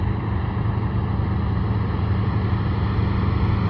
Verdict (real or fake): real